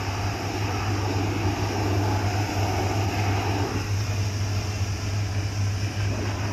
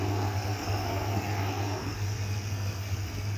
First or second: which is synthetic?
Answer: second